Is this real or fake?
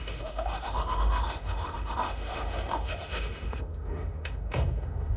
fake